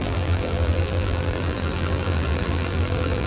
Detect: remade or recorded remade